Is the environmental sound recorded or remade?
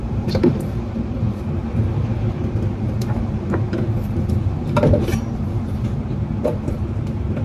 remade